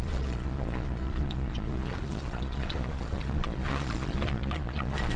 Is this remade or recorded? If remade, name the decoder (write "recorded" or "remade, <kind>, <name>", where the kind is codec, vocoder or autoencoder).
remade, vocoder, Vocos